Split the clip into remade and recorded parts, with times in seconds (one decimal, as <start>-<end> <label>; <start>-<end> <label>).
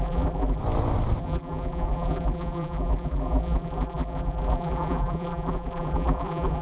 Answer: 0.0-0.6 remade; 0.6-1.2 recorded; 1.2-6.6 remade